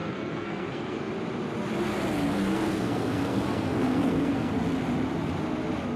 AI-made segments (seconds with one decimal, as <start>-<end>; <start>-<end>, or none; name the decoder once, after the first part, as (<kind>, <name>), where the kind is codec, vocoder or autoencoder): 0.0-1.1 (codec, SNAC); 2.4-4.5